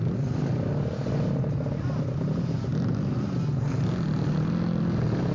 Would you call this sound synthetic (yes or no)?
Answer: no